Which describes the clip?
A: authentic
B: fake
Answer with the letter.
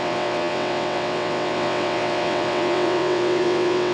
B